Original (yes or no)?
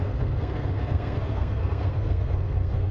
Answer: no